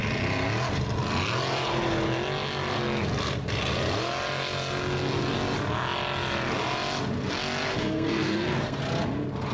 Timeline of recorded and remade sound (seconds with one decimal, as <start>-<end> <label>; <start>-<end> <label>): 0.0-7.7 recorded; 7.7-8.8 remade; 8.8-9.5 recorded